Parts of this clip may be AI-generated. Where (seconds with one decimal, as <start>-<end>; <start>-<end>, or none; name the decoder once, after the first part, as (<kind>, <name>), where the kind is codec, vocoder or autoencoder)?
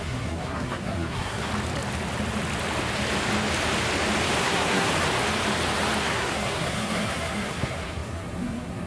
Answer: 0.0-1.5 (codec, SNAC); 4.4-4.9; 6.0-8.9